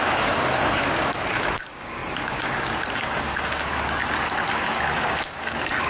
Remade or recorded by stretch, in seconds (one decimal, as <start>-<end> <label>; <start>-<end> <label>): 0.0-4.0 remade; 4.0-4.5 recorded; 4.5-5.9 remade

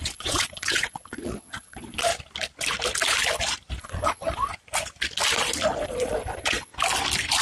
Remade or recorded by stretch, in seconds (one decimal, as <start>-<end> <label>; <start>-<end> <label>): 0.0-2.1 remade; 2.1-3.8 recorded; 3.8-4.5 remade; 4.5-5.8 recorded; 5.8-6.7 remade; 6.7-7.4 recorded

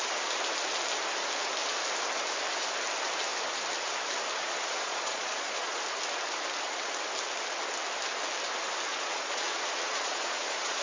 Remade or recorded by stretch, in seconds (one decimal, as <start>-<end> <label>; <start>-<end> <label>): 0.0-4.4 recorded; 4.4-5.8 remade; 5.8-8.9 recorded; 8.9-10.8 remade

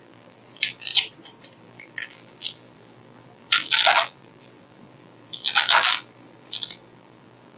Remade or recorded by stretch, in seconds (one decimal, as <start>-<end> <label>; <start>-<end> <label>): 0.0-0.9 remade; 0.9-1.6 recorded; 1.6-7.6 remade

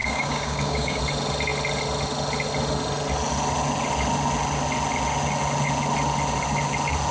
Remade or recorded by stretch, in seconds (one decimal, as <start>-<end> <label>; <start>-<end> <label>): 0.0-1.0 remade; 1.0-7.1 recorded